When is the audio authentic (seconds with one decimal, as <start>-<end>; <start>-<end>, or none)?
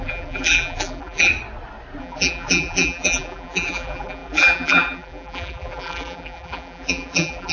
1.3-2.0